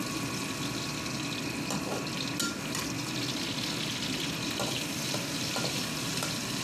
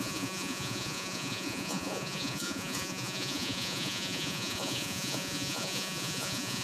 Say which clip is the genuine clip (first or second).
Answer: first